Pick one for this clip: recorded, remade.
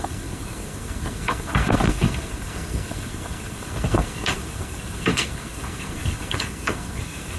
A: remade